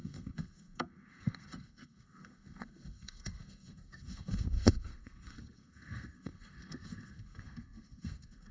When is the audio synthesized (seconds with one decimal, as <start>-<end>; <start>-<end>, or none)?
0.0-8.5